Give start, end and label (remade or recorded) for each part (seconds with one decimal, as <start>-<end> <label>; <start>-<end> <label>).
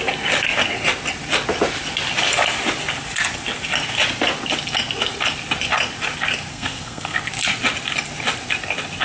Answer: 0.0-6.5 recorded; 6.5-7.2 remade; 7.2-9.0 recorded